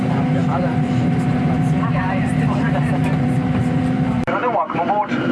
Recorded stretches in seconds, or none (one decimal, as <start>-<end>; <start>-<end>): none